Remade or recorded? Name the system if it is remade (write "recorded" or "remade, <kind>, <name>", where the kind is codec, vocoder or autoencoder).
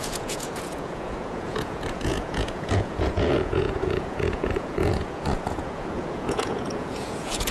remade, vocoder, Vocos